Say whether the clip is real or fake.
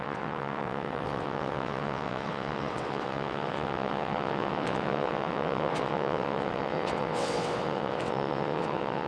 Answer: fake